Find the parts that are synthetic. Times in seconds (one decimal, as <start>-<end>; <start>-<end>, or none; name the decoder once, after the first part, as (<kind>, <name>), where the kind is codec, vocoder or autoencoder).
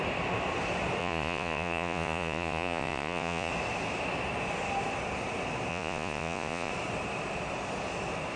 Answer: 1.0-3.5 (vocoder, Vocos); 5.7-6.7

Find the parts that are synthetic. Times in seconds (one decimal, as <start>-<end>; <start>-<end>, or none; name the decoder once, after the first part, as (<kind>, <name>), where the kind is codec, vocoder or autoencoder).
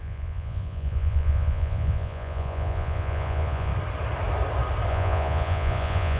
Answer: 0.0-3.7 (vocoder, Vocos); 4.9-6.2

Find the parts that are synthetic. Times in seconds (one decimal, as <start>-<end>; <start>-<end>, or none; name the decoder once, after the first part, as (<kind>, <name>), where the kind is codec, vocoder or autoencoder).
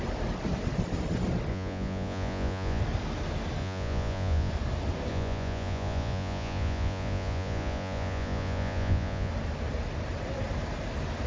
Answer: 1.5-2.8 (vocoder, Vocos); 3.6-4.5; 5.1-9.3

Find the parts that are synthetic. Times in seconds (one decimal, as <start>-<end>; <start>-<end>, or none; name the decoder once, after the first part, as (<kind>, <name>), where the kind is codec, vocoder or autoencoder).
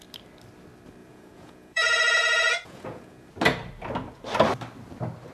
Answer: 1.0-3.3 (vocoder, Vocos)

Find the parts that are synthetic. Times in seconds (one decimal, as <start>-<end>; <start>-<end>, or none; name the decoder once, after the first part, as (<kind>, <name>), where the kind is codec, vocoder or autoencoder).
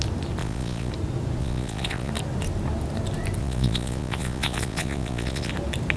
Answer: 0.4-0.9 (vocoder, Vocos); 1.4-2.1; 3.4-5.5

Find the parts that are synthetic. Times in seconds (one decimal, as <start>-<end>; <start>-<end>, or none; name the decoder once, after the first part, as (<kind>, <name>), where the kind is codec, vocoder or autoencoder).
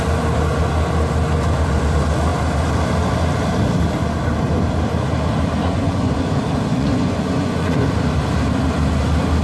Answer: 5.6-6.1 (vocoder, Vocos); 6.7-7.9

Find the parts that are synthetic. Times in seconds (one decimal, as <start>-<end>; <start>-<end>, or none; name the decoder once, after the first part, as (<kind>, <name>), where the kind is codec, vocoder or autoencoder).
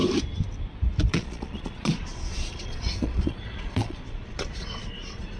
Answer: 1.1-5.4 (vocoder, Vocos)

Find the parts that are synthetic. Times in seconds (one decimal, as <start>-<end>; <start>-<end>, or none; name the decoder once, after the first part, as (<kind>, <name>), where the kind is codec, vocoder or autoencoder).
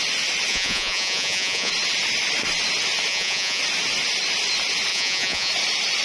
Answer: 0.5-1.7 (vocoder, Vocos); 3.1-3.6; 4.9-5.5